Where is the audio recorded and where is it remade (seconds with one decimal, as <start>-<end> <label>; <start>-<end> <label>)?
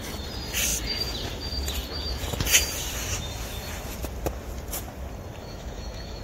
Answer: 0.0-5.4 recorded; 5.4-6.2 remade